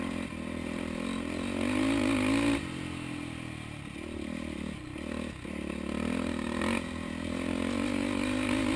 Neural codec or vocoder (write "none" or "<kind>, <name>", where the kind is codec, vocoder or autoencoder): none